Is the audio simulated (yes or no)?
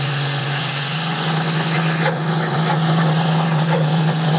yes